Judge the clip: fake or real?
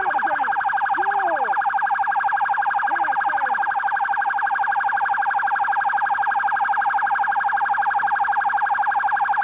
real